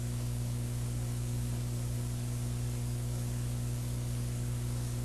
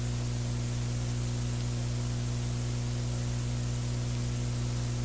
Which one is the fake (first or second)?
first